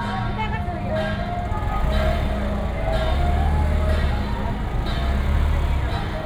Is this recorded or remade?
recorded